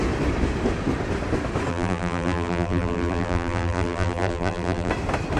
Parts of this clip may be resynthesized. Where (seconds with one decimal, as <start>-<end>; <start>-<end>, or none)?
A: 1.7-4.9